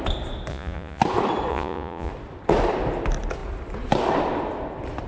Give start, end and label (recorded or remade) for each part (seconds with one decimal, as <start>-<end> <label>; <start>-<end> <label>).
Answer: 0.0-0.5 recorded; 0.5-1.0 remade; 1.0-1.5 recorded; 1.5-2.1 remade; 2.1-5.1 recorded